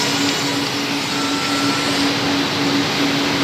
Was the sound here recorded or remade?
recorded